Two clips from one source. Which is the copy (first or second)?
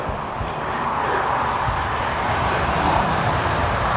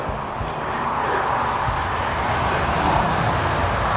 first